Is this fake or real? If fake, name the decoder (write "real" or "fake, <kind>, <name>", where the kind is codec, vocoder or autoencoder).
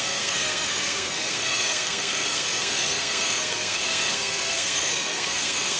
fake, codec, SNAC